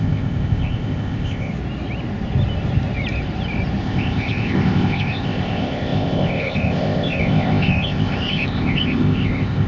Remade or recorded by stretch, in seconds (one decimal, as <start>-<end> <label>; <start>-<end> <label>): 0.0-1.5 remade; 1.5-3.8 recorded; 3.8-9.7 remade